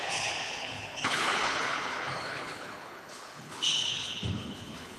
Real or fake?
fake